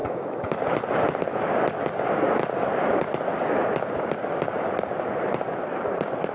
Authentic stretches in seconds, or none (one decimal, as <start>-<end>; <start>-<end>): 0.6-6.3